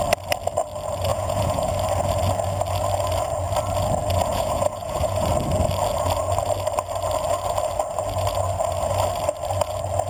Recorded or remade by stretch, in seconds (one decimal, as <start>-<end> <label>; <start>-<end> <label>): 0.0-1.1 recorded; 1.1-1.7 remade; 1.7-4.3 recorded; 4.3-5.3 remade; 5.3-10.1 recorded